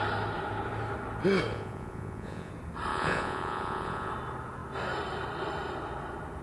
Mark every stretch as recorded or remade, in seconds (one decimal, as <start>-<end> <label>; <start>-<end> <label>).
0.0-1.5 recorded; 1.5-2.5 remade; 2.5-2.9 recorded; 2.9-4.1 remade; 4.1-6.4 recorded